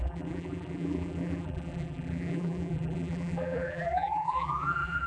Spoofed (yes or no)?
yes